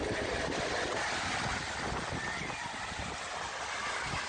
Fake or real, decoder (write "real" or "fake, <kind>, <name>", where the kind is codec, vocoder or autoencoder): real